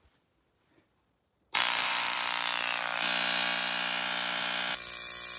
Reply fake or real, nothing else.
real